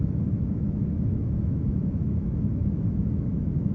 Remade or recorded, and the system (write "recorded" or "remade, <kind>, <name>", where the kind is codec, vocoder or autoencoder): remade, autoencoder, DAC-VAE